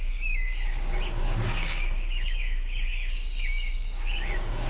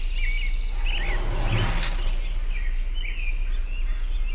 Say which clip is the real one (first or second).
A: second